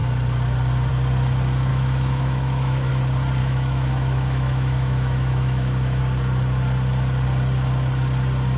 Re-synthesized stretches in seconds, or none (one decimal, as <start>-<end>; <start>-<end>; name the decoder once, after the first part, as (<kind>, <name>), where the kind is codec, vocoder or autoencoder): 1.7-2.9 (autoencoder, DAC-VAE); 3.4-6.0